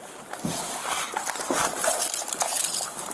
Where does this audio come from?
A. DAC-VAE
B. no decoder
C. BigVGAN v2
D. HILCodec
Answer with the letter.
B